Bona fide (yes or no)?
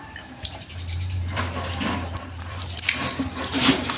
no